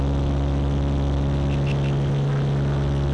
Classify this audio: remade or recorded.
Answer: recorded